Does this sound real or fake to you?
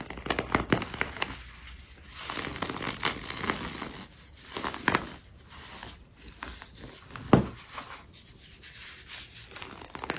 real